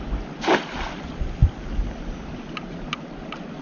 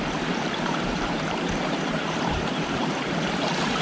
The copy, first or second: second